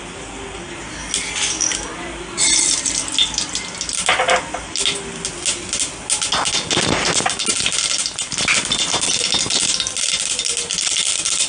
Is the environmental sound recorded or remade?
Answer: recorded